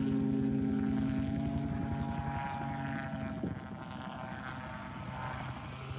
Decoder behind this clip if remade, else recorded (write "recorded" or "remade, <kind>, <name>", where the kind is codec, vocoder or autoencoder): recorded